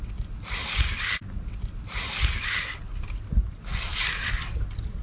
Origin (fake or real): real